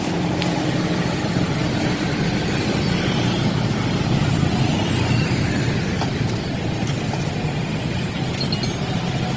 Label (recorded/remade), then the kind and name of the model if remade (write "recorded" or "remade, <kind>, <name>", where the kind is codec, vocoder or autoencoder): recorded